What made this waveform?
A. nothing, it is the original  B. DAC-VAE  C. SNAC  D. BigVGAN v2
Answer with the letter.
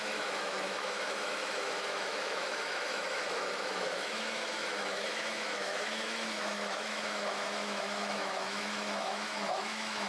B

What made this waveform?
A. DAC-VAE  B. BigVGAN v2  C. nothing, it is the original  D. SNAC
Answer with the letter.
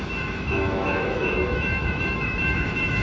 A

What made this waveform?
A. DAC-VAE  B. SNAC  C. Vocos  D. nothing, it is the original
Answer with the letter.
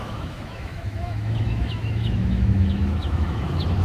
A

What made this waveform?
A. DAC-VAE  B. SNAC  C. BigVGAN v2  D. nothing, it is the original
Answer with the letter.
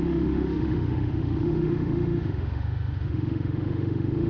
A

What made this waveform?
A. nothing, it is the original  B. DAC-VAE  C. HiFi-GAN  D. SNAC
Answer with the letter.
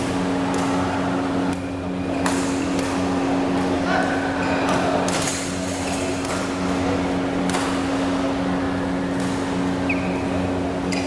A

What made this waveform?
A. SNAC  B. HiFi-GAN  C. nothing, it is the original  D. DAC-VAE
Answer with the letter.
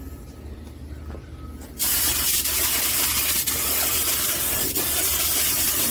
C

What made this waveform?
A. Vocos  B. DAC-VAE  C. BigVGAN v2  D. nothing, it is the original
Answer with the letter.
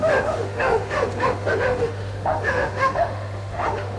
B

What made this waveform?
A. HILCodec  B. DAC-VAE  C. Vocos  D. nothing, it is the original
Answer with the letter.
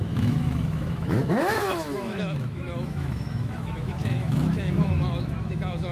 B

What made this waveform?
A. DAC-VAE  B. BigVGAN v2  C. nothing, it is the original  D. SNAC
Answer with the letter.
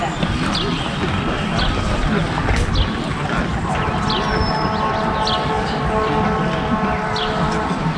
C